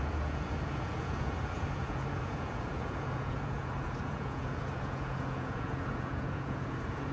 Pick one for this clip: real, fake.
fake